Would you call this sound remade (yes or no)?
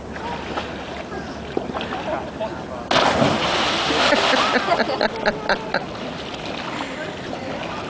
no